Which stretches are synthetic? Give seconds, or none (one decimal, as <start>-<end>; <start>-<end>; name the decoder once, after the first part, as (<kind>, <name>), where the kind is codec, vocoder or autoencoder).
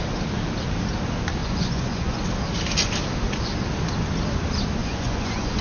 1.4-2.2 (vocoder, Vocos); 4.8-5.6